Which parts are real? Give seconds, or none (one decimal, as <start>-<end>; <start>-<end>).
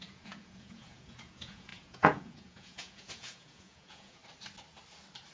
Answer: 4.2-5.3